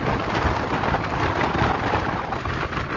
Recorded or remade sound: recorded